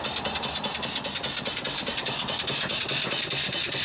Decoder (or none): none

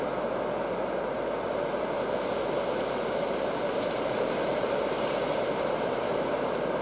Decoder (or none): vocoder, BigVGAN v2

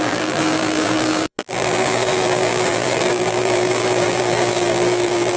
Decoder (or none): vocoder, BigVGAN v2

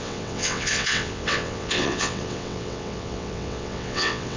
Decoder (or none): vocoder, WaveNeXt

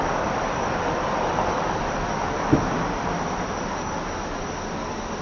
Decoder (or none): none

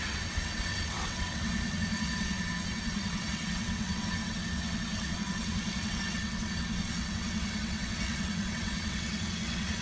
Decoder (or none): vocoder, WaveNeXt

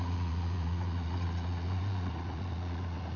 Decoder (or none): vocoder, Vocos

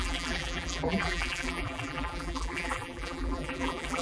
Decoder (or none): vocoder, BigVGAN v2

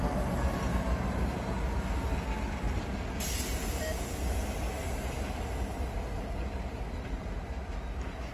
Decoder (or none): none